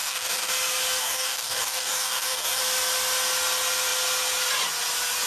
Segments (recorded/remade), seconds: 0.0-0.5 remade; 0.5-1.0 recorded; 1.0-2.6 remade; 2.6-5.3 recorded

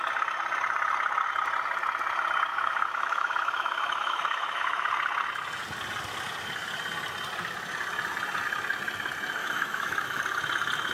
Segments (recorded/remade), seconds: 0.0-2.5 recorded; 2.5-4.9 remade; 4.9-9.4 recorded; 9.4-10.2 remade; 10.2-10.9 recorded

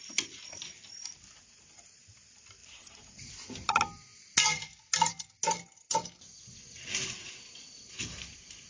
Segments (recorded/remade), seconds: 0.0-8.7 recorded

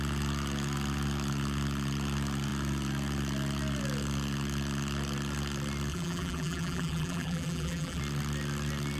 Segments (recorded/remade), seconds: 0.0-5.9 recorded; 5.9-8.0 remade; 8.0-9.0 recorded

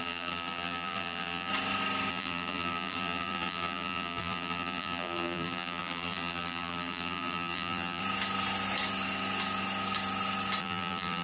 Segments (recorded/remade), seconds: 0.0-1.5 remade; 1.5-2.1 recorded; 2.1-8.0 remade; 8.0-10.6 recorded; 10.6-11.2 remade

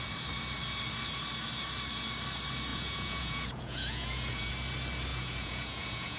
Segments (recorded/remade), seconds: 0.0-2.7 recorded; 2.7-4.5 remade; 4.5-5.1 recorded; 5.1-6.2 remade

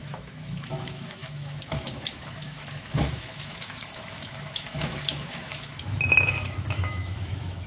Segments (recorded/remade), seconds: 0.0-7.7 remade